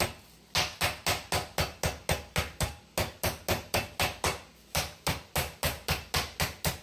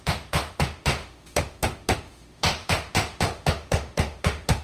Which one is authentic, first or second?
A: first